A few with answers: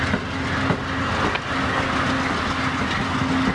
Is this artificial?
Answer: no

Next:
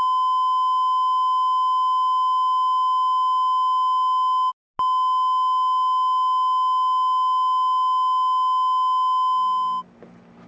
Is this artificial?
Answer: no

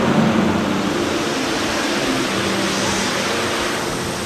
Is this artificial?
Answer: no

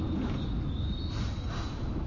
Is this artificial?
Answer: no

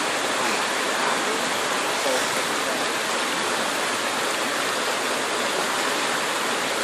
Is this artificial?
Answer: no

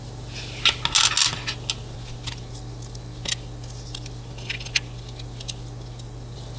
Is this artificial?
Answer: no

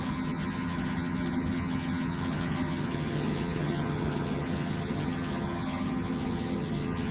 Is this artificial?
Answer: yes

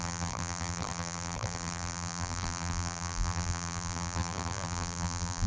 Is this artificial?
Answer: yes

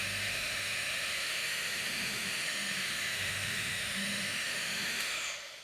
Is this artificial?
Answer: yes